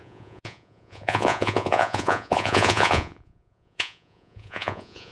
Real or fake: fake